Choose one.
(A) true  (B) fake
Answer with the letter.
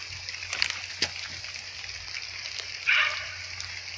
A